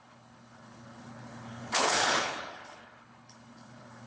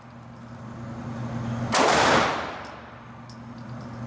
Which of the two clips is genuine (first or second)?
second